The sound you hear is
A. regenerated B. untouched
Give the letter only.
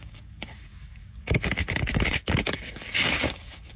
A